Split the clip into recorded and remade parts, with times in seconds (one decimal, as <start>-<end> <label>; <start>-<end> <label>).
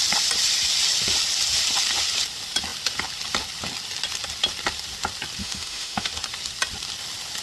0.0-5.4 recorded; 5.4-6.1 remade; 6.1-7.4 recorded